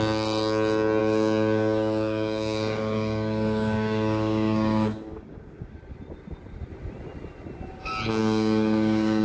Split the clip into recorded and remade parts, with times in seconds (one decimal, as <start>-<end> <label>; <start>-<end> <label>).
0.0-1.0 recorded; 1.0-5.7 remade; 5.7-8.2 recorded; 8.2-9.2 remade